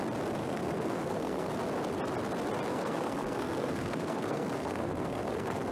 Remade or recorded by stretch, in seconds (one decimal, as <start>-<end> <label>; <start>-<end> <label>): 0.0-0.4 recorded; 0.4-1.5 remade; 1.5-2.7 recorded; 2.7-5.7 remade